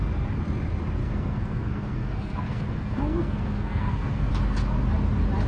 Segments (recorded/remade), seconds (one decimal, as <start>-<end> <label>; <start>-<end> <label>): 0.0-1.0 recorded; 1.0-4.3 remade; 4.3-5.5 recorded